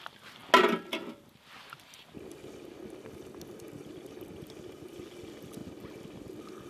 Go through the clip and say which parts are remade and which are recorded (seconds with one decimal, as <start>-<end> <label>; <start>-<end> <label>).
0.0-6.7 recorded